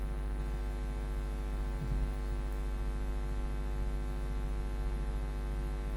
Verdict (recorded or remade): recorded